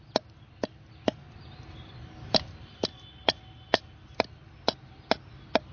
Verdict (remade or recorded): recorded